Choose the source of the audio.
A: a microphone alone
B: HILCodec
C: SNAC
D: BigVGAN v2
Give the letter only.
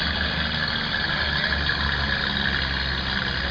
A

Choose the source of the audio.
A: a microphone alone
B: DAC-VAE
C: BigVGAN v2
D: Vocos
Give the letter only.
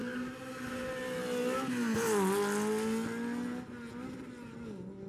A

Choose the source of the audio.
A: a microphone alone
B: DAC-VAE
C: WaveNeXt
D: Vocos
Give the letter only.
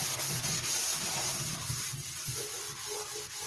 A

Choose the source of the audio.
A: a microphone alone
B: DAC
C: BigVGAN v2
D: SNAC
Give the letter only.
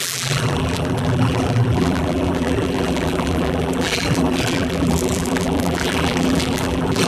C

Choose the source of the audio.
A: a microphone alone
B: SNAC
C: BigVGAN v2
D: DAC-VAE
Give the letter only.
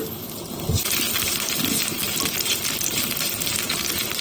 A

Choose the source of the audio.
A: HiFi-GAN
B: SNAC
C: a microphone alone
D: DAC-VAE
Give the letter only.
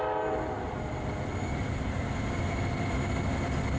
C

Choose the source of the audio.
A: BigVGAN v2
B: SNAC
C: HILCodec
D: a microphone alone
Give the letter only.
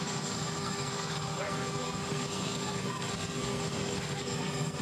B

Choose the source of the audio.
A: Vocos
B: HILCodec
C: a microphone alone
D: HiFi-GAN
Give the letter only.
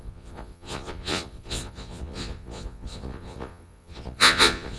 A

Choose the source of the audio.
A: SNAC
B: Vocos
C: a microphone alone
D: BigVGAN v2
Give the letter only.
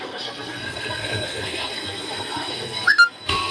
A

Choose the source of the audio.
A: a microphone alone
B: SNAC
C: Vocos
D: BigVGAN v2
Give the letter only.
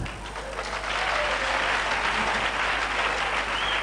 A